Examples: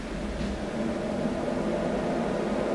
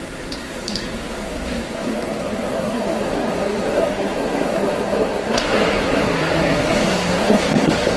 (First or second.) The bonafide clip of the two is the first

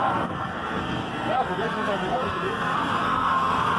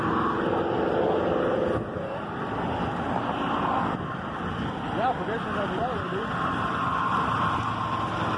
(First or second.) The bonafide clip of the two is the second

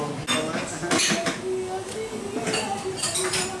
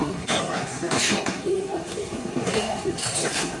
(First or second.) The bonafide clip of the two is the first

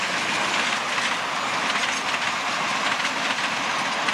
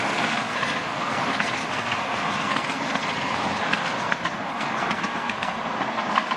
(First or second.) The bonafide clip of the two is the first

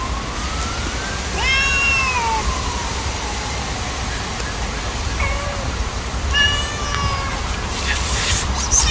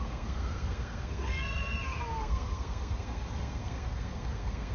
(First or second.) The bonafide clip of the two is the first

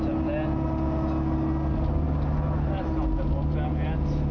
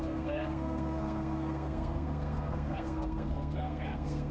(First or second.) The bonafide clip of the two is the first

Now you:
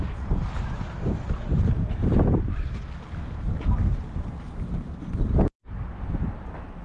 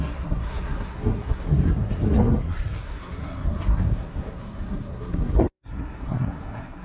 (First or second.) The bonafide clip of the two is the first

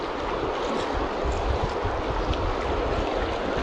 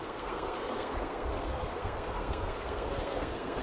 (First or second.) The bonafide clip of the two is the first